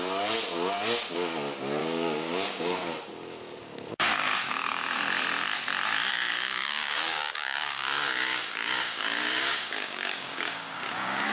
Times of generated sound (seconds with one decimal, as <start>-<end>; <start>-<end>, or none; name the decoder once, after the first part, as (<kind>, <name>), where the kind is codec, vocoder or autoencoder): 1.8-3.1 (codec, DAC); 3.6-5.0; 6.1-11.3